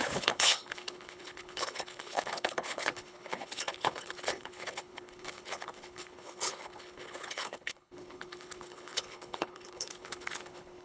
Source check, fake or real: fake